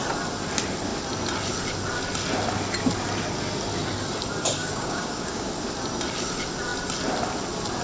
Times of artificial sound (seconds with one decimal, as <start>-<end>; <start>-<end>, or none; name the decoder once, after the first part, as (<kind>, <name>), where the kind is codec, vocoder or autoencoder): 4.6-5.5 (codec, DAC)